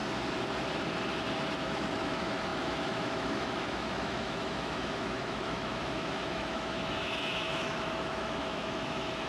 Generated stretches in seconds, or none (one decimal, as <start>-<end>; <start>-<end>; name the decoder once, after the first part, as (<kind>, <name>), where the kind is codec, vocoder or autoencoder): 1.6-9.3 (autoencoder, DAC-VAE)

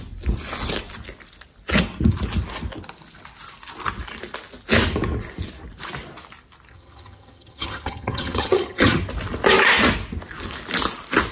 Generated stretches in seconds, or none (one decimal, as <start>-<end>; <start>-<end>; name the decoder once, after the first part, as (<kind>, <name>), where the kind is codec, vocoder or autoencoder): 6.7-9.0 (vocoder, HiFi-GAN)